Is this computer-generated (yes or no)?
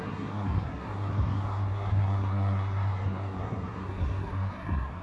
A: yes